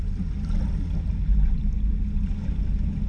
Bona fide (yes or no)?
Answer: yes